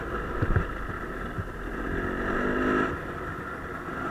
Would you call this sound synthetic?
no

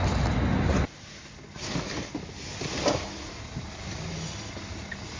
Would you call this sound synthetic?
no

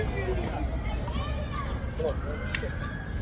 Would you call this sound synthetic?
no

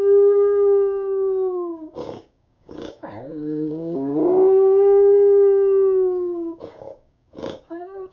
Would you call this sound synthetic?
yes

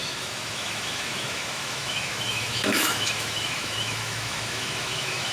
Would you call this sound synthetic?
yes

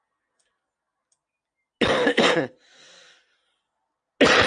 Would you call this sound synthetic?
no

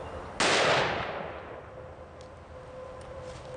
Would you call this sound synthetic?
no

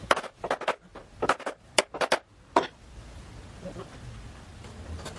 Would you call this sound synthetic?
no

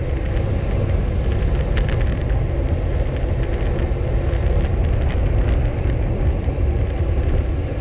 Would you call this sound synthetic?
no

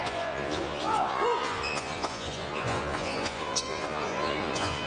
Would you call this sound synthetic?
yes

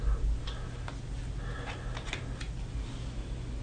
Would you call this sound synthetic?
no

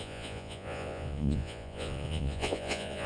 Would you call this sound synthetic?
yes